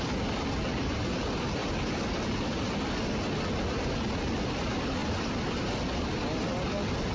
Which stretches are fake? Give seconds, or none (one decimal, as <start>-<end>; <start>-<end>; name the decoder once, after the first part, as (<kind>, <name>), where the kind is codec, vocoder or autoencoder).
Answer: none